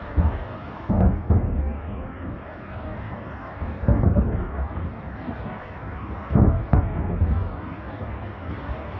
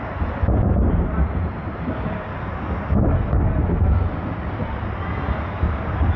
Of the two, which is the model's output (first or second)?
first